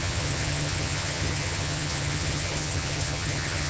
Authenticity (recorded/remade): remade